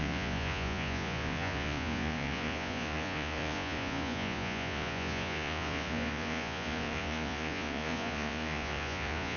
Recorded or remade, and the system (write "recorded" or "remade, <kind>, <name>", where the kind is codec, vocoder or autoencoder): remade, vocoder, Vocos